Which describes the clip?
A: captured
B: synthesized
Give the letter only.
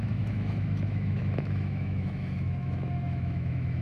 B